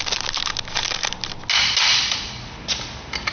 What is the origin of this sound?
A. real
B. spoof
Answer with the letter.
A